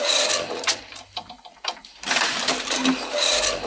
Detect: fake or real fake